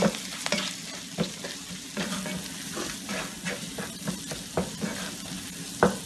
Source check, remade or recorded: recorded